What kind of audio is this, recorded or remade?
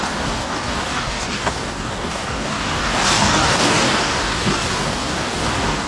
remade